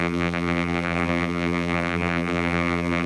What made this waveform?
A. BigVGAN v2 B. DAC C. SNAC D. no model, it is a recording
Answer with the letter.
A